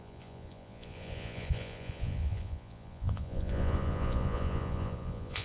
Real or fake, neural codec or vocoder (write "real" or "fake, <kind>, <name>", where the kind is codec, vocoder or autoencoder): fake, vocoder, Vocos